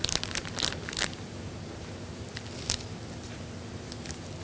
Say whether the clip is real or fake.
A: real